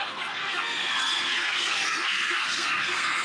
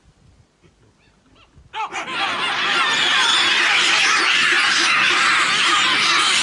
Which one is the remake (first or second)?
first